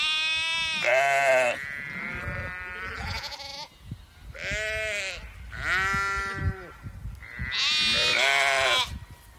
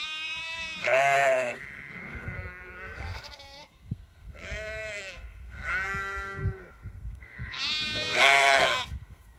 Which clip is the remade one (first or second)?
second